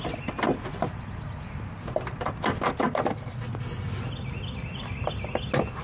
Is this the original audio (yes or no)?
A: yes